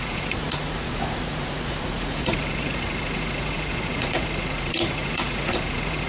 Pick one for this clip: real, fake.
fake